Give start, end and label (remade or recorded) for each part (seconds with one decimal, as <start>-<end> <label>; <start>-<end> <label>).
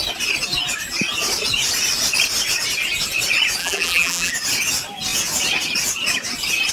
0.0-3.6 recorded; 3.6-4.3 remade; 4.3-6.7 recorded